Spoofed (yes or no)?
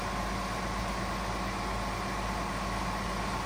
no